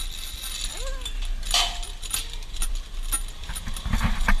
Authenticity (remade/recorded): recorded